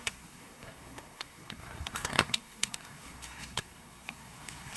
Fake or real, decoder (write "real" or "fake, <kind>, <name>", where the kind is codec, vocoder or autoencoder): fake, codec, SNAC